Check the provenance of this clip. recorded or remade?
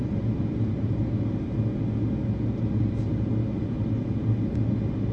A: recorded